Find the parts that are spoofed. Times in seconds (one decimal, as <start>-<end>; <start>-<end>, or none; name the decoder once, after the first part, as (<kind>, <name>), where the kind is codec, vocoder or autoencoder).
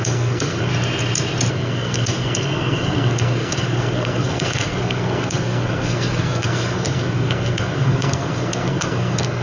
0.0-0.7 (codec, SNAC); 1.5-9.4